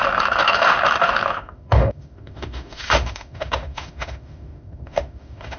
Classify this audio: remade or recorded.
remade